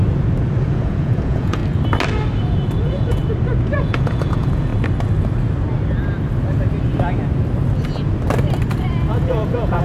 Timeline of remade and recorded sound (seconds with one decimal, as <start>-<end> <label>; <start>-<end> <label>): 0.0-0.6 recorded; 0.6-1.6 remade; 1.6-2.8 recorded; 2.8-3.2 remade; 3.2-3.7 recorded; 3.7-4.7 remade; 4.7-9.1 recorded; 9.1-9.8 remade